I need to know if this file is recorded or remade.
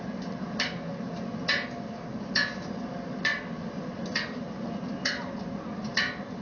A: recorded